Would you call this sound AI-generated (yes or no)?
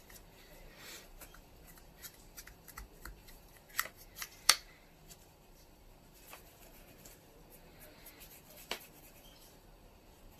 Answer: yes